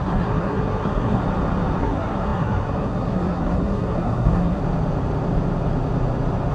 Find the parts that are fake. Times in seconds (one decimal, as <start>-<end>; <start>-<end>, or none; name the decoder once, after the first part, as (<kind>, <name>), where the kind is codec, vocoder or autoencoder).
0.0-1.2 (codec, SNAC); 1.8-4.6